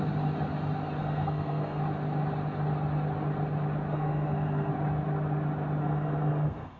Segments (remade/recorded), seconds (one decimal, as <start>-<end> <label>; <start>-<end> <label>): 0.0-1.0 recorded; 1.0-1.8 remade; 1.8-3.9 recorded; 3.9-4.7 remade; 4.7-5.8 recorded; 5.8-6.8 remade